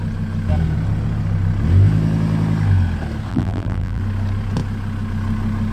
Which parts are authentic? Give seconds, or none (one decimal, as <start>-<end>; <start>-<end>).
0.0-3.3; 4.0-5.7